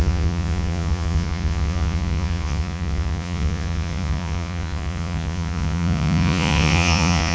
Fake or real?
fake